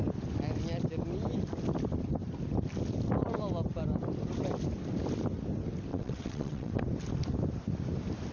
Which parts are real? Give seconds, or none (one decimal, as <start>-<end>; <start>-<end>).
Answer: 0.0-5.9; 6.8-8.3